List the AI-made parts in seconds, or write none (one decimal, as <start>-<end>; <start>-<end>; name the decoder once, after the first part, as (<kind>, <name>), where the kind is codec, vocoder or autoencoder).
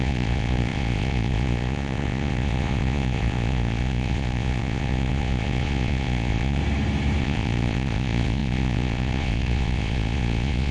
0.0-6.6 (vocoder, Vocos); 7.2-10.7